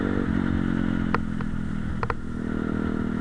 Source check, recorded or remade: recorded